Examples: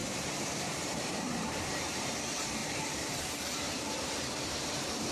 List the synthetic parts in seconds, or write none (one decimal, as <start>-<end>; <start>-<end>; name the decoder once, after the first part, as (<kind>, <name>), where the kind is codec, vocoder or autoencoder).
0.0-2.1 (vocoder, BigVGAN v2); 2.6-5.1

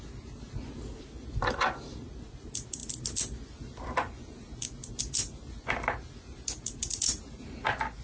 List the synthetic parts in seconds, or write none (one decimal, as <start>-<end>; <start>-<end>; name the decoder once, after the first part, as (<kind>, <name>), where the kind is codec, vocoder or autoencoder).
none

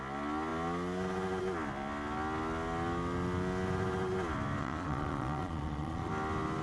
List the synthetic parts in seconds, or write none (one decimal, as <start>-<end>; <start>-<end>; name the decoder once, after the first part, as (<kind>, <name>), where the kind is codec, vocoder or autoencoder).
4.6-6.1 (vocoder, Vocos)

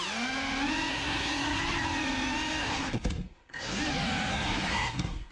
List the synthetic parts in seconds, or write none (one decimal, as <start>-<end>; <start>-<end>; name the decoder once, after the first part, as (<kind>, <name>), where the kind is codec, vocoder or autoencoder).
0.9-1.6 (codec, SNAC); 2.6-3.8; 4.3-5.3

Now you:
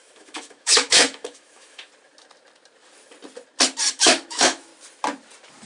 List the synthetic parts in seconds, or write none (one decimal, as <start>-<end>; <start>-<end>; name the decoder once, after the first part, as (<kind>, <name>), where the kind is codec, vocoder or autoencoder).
0.0-1.9 (autoencoder, DAC-VAE); 3.9-4.7